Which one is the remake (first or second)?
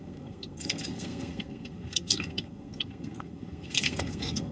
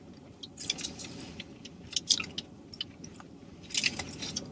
first